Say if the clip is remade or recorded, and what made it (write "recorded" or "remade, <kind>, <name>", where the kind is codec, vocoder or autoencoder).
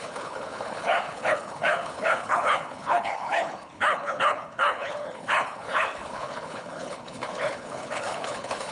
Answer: remade, codec, HILCodec